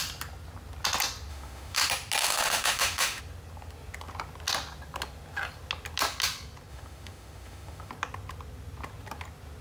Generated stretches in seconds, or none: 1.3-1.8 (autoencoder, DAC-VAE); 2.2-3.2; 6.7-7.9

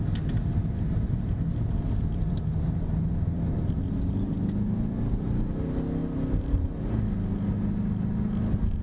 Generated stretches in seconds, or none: none

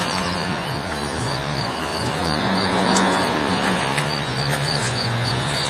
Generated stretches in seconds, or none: 0.0-5.7 (vocoder, Vocos)